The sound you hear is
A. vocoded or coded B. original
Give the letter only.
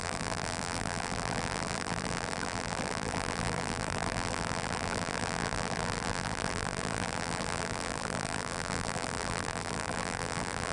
A